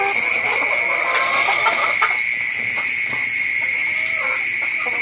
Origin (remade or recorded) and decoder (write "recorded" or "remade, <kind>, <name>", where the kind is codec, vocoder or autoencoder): recorded